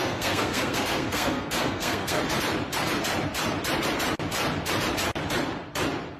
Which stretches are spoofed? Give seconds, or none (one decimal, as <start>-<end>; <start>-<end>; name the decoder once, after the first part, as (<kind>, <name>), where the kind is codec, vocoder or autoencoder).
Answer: 0.0-2.2 (codec, SNAC)